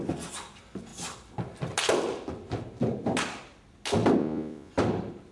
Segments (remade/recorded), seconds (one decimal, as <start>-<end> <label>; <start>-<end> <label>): 0.0-4.2 recorded; 4.2-4.7 remade; 4.7-5.3 recorded